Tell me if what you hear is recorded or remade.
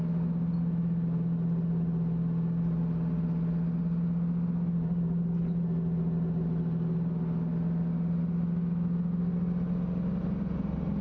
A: recorded